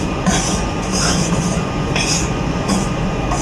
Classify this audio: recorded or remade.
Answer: remade